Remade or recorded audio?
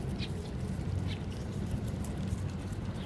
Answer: recorded